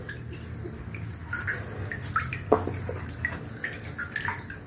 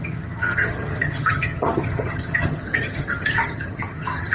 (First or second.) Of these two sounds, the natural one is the first